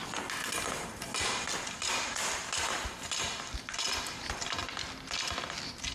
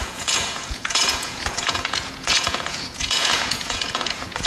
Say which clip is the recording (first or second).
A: first